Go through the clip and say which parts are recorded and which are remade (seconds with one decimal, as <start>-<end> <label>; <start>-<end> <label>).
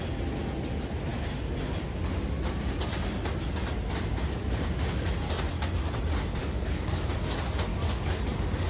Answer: 0.0-6.4 recorded; 6.4-7.0 remade; 7.0-7.7 recorded; 7.7-8.7 remade